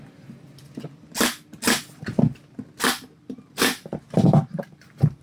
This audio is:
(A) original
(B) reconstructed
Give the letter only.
A